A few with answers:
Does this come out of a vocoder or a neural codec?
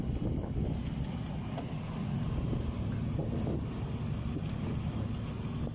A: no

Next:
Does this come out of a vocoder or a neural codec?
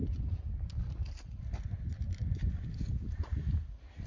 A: no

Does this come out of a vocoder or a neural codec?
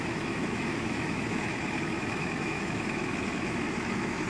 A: yes